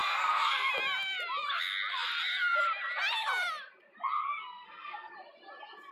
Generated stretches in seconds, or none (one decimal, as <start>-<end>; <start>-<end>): 0.0-0.7; 4.1-5.1